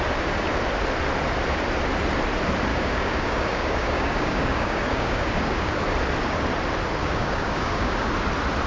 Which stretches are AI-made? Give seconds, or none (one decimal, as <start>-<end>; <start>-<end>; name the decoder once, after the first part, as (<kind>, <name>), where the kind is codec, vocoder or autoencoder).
2.7-5.8 (codec, DAC); 7.0-8.1